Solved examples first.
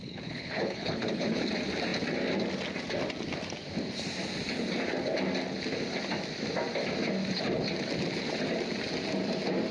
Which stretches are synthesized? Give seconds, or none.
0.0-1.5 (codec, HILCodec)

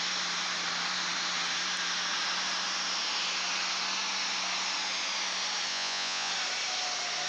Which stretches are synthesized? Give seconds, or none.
5.7-6.3 (vocoder, Vocos)

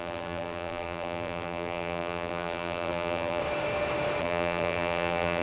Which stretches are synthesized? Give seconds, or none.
0.0-3.4 (vocoder, BigVGAN v2); 4.2-5.4

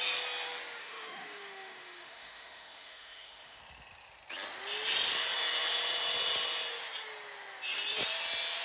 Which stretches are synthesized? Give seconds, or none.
0.8-3.6 (autoencoder, DAC-VAE)